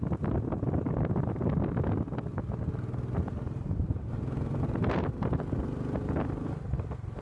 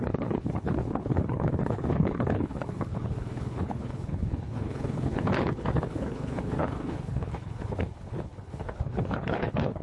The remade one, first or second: second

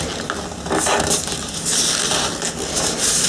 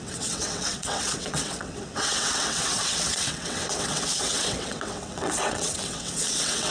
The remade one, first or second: second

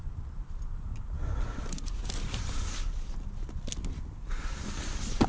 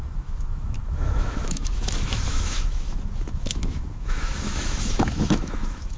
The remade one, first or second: second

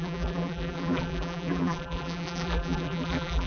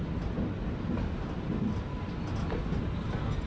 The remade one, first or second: first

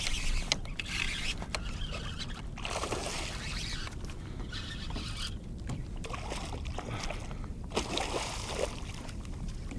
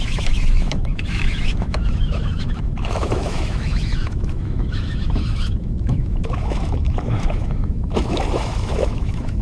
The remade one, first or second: second